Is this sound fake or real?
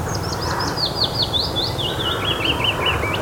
real